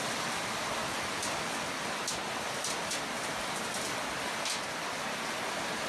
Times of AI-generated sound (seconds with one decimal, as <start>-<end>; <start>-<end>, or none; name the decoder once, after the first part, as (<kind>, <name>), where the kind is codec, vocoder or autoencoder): 0.8-4.3 (vocoder, BigVGAN v2)